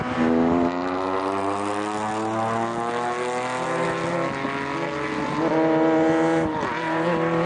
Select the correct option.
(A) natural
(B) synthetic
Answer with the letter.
A